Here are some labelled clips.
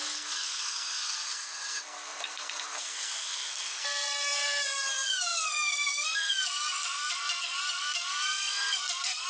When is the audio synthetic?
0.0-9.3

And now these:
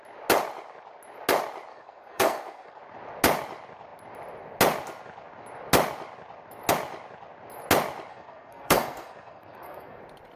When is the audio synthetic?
1.7-2.8; 8.1-10.0

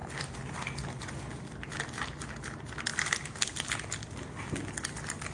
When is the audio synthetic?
none

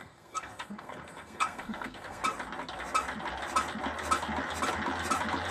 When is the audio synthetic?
0.0-2.2

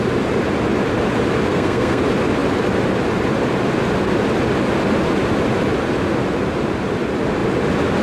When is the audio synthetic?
1.5-2.0

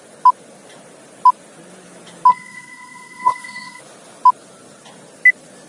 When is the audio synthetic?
2.3-3.8

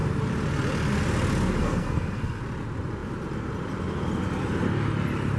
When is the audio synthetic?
1.6-2.4

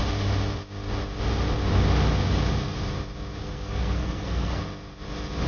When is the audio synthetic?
3.4-4.6